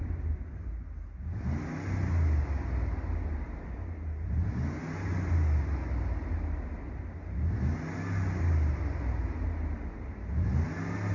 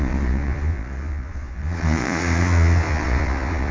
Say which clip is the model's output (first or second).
second